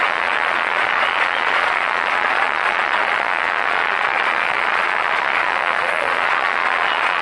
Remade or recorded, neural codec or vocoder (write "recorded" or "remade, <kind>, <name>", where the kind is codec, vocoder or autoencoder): remade, vocoder, Vocos